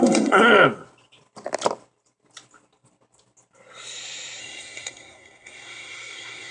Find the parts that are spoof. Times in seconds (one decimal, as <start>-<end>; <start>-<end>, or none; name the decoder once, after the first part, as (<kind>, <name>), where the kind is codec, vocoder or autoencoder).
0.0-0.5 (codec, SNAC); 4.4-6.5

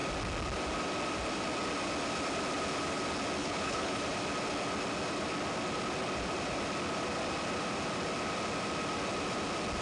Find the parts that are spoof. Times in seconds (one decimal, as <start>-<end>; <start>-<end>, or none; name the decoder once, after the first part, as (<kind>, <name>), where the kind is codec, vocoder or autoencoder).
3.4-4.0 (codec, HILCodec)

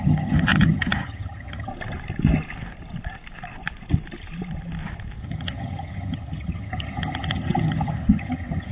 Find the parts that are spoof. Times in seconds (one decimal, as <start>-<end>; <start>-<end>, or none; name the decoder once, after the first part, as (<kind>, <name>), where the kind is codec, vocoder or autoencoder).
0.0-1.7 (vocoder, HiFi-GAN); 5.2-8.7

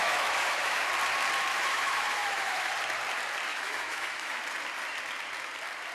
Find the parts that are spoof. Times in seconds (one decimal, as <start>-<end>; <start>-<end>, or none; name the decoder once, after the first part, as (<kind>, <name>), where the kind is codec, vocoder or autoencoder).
0.0-0.9 (autoencoder, DAC-VAE); 1.5-2.7; 3.5-4.4